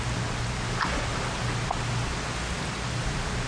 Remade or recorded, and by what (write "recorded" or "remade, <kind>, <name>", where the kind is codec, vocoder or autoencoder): recorded